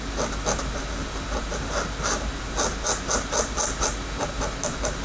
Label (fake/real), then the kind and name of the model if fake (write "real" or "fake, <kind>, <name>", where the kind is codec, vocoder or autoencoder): real